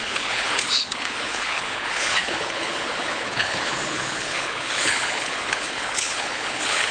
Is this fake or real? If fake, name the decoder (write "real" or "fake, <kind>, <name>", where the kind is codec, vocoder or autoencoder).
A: fake, codec, HILCodec